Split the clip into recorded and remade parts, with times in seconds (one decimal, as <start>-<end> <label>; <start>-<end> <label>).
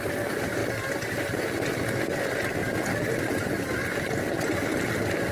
0.0-5.3 recorded